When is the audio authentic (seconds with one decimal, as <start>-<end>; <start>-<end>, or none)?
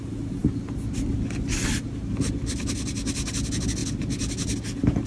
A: 0.0-5.1